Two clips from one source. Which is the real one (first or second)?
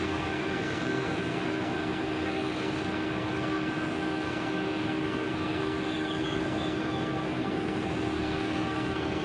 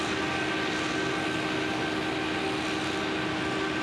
second